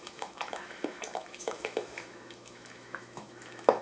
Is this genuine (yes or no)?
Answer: no